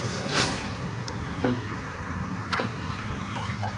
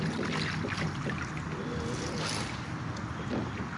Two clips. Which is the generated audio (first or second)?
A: first